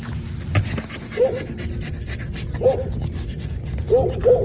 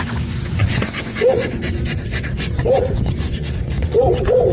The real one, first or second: first